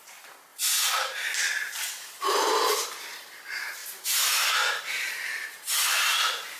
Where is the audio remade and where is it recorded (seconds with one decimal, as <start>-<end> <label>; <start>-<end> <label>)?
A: 0.0-6.6 recorded